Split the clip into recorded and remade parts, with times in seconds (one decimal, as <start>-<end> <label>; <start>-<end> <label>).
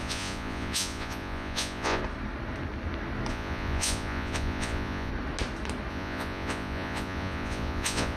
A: 0.0-2.0 remade; 2.0-3.3 recorded; 3.3-5.1 remade; 5.1-5.9 recorded; 5.9-8.2 remade